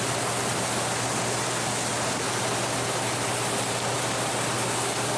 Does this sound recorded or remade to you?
recorded